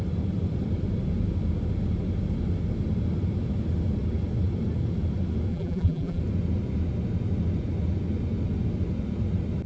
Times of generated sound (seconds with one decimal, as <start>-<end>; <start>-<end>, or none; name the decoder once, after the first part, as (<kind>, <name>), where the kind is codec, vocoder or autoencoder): 5.5-6.2 (vocoder, BigVGAN v2)